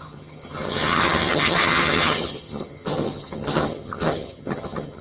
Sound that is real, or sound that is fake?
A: fake